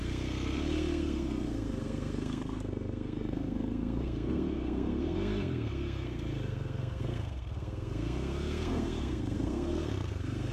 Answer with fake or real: fake